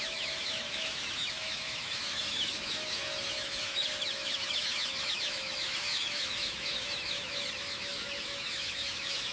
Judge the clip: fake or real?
fake